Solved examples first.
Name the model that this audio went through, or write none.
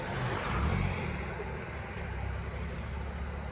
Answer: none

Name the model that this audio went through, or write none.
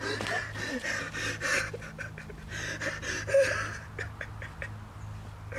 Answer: none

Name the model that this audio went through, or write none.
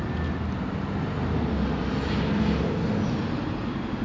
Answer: none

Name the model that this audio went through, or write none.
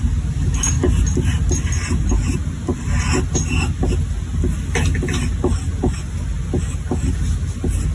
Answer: none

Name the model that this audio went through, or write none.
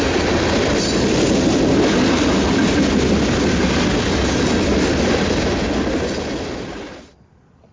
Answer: none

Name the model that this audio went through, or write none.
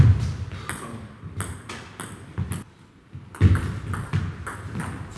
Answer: none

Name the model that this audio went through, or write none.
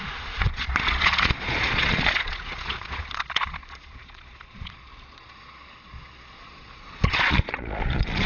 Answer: vocoder, Vocos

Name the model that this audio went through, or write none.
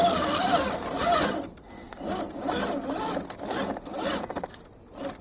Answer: none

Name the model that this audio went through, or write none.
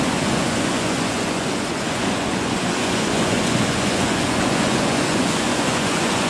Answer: vocoder, Vocos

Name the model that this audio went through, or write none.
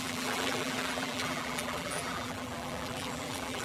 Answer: vocoder, BigVGAN v2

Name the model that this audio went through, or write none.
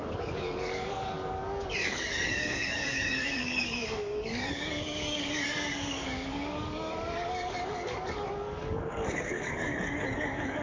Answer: codec, DAC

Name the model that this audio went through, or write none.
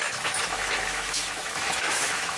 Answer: autoencoder, DAC-VAE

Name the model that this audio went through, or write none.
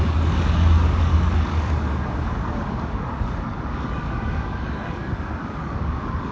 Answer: codec, DAC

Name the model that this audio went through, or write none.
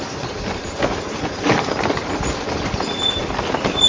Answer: none